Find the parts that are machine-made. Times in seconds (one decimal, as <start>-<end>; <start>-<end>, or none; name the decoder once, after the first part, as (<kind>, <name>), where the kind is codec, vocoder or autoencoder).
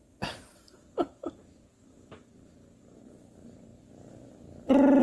none